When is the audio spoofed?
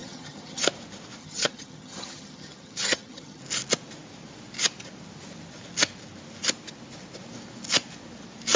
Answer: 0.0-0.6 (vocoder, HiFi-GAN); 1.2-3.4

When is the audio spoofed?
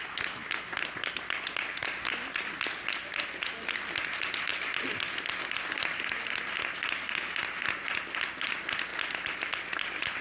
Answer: none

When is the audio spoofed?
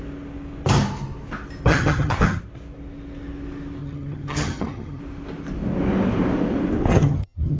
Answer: 1.7-2.4 (vocoder, HiFi-GAN); 3.8-5.0; 6.9-7.6